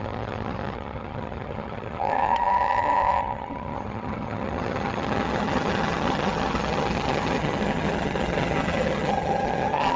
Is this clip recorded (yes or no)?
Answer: no